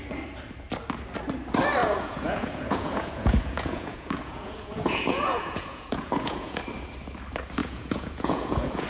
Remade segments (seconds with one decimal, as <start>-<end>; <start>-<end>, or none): 1.8-6.6; 7.6-8.9